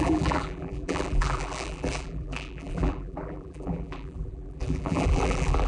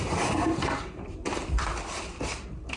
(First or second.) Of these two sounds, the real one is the second